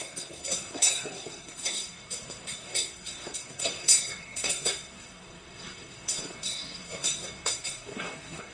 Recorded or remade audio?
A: remade